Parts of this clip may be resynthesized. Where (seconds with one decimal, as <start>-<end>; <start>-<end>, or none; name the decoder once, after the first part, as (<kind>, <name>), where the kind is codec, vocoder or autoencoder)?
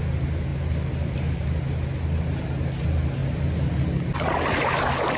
none